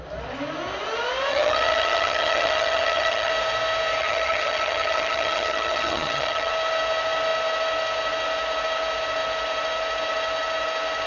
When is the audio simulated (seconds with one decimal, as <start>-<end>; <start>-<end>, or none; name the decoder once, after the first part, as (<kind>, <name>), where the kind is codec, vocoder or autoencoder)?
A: 1.3-3.3 (vocoder, HiFi-GAN); 4.0-6.5